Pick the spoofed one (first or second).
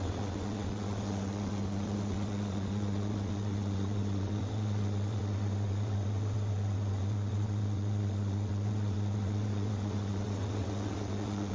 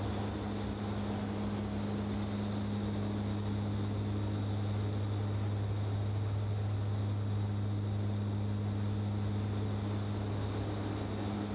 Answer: first